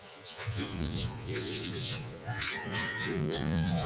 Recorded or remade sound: remade